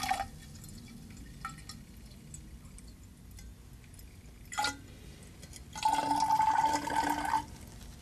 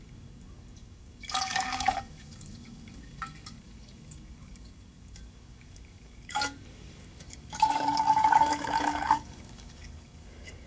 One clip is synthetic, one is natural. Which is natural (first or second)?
first